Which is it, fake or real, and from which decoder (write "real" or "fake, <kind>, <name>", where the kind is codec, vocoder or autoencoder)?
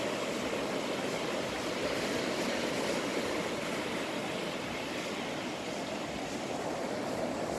real